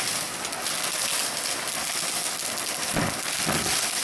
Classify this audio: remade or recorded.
recorded